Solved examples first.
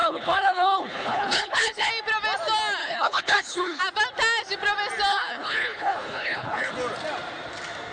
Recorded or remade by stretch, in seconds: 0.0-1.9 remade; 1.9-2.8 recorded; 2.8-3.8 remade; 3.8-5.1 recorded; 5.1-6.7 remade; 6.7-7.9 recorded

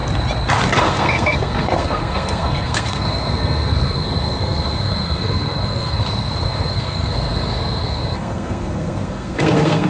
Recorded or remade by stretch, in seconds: 0.0-0.8 recorded; 0.8-9.9 remade

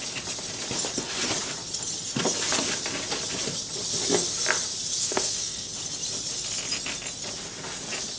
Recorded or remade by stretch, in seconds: 0.0-5.0 recorded; 5.0-5.7 remade; 5.7-8.2 recorded